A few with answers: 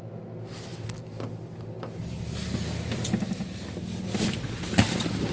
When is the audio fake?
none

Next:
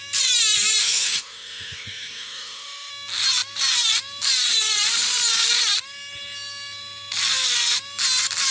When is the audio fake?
0.8-2.9

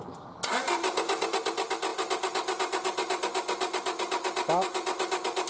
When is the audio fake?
none

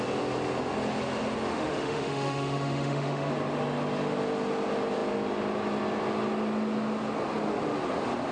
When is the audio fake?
1.5-3.3

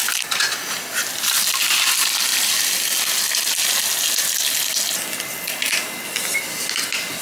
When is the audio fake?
none

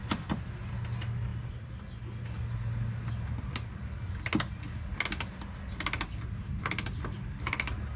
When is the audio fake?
none

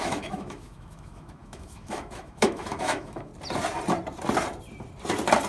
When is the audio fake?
0.0-3.3

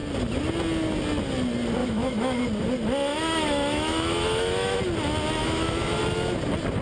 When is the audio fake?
1.8-2.4; 3.1-4.8; 5.4-6.0